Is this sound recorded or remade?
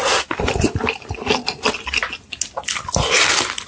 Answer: recorded